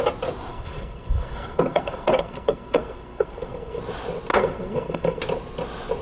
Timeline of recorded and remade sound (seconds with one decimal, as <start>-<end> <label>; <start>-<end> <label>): 0.0-0.5 recorded; 0.5-3.8 remade; 3.8-4.3 recorded; 4.3-5.2 remade; 5.2-6.0 recorded